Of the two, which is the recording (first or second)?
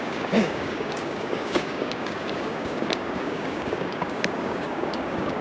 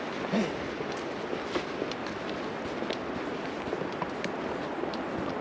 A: second